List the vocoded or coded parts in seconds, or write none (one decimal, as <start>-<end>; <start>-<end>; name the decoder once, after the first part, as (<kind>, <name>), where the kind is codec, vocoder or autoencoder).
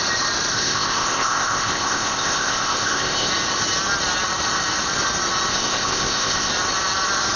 0.5-3.3 (codec, ZipCodec); 5.5-6.5